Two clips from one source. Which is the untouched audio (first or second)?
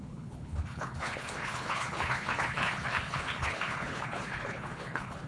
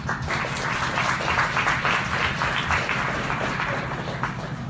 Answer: second